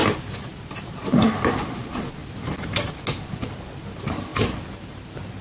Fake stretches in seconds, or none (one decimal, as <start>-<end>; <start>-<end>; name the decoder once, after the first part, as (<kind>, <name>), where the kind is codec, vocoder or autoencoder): none